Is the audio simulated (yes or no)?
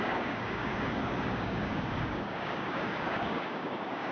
yes